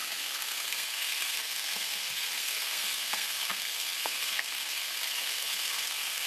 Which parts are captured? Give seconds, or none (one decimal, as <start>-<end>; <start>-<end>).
none